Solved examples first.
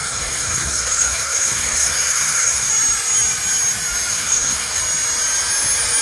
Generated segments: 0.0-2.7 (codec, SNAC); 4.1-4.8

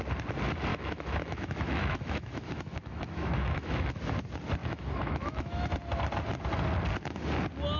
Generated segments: 0.7-4.0 (autoencoder, DAC-VAE); 4.6-5.7

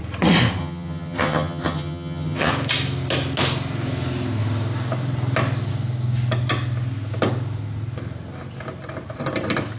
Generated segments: 0.6-2.5 (vocoder, HiFi-GAN)